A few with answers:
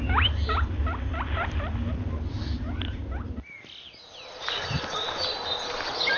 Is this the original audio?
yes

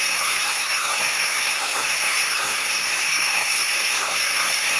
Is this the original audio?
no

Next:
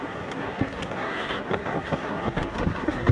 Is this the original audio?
no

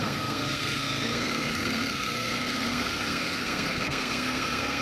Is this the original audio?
no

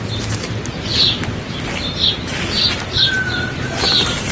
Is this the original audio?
yes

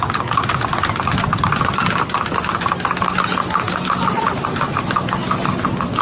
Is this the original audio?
yes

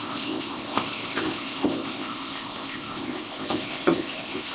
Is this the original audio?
no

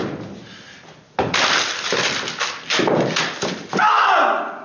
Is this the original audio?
yes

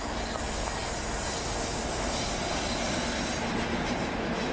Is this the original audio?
yes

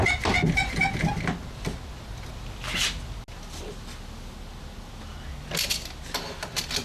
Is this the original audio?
yes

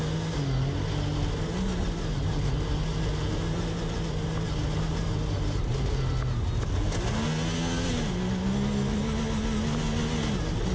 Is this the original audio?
yes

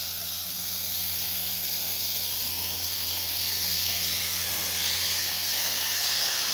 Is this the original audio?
no